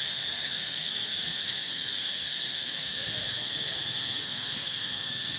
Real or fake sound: fake